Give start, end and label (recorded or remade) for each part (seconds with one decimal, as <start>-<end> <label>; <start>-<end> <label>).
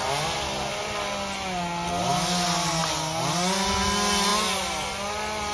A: 0.0-5.5 recorded